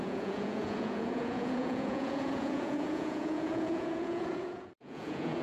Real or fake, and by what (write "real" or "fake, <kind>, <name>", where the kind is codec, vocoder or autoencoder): fake, vocoder, Vocos